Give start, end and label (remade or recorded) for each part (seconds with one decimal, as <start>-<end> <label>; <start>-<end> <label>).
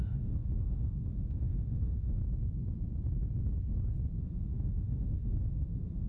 0.0-2.2 remade; 2.2-4.2 recorded; 4.2-6.1 remade